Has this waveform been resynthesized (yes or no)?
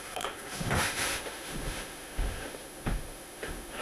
yes